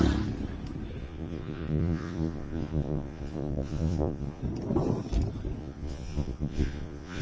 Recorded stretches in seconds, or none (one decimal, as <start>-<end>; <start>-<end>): 0.0-1.0; 4.4-5.6